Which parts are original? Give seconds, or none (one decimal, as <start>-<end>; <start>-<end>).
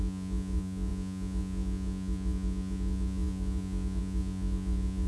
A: none